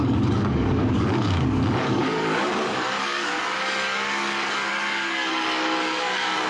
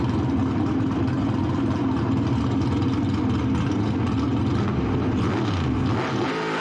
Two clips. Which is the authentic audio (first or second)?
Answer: second